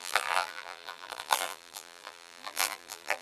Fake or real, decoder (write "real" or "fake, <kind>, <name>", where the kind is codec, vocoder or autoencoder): fake, vocoder, BigVGAN v2